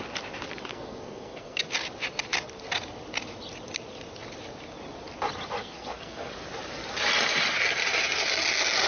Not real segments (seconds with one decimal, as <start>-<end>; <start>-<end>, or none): 0.7-1.7; 5.6-6.3